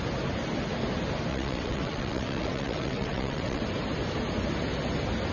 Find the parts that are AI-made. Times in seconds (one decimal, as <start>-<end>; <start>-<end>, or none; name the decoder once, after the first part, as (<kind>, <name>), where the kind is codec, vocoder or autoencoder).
1.3-3.6 (vocoder, WaveNeXt)